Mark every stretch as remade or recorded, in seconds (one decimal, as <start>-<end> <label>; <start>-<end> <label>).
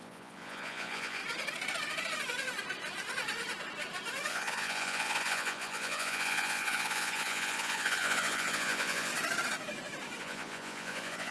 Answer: 0.0-1.2 remade; 1.2-4.3 recorded; 4.3-9.1 remade; 9.1-10.2 recorded; 10.2-11.3 remade